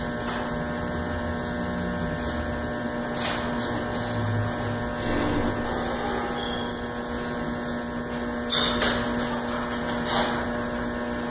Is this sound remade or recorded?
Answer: recorded